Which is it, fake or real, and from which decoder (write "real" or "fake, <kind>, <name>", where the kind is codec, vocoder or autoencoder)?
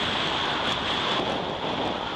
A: real